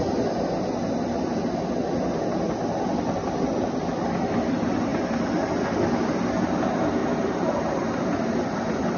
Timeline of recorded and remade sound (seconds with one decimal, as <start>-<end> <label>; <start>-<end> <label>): 0.0-3.5 recorded; 3.5-4.1 remade; 4.1-9.0 recorded